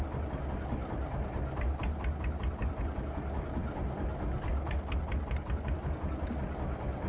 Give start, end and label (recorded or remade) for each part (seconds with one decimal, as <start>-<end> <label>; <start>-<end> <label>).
0.0-7.1 recorded